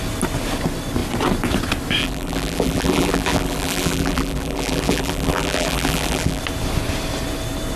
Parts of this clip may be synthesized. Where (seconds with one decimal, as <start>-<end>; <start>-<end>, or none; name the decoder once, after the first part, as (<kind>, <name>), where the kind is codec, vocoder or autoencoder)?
2.0-6.4 (vocoder, BigVGAN v2)